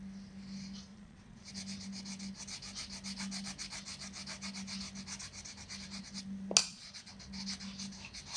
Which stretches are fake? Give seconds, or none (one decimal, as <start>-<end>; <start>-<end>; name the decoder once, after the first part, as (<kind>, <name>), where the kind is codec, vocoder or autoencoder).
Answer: 0.9-1.5 (vocoder, Vocos); 6.6-7.1